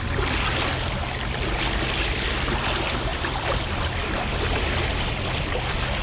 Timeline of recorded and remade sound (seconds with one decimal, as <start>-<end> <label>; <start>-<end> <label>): 0.0-3.1 recorded; 3.1-5.4 remade; 5.4-6.0 recorded